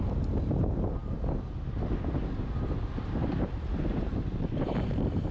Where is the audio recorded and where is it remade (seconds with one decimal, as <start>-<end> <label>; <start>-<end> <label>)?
0.0-3.2 recorded; 3.2-5.3 remade